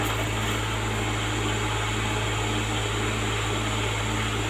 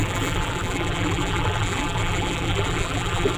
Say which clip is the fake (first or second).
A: second